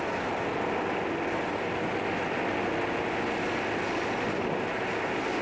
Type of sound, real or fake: real